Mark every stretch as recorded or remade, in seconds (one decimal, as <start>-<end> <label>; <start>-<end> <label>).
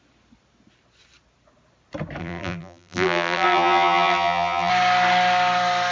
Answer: 0.0-2.2 recorded; 2.2-4.7 remade; 4.7-5.9 recorded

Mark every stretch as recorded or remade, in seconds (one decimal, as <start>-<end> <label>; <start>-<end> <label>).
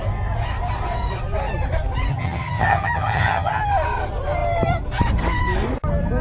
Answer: 0.0-2.1 recorded; 2.1-3.6 remade; 3.6-6.2 recorded